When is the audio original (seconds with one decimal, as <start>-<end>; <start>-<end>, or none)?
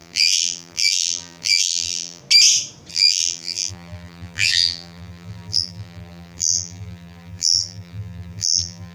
2.2-2.9